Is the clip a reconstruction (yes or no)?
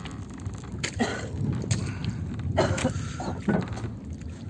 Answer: no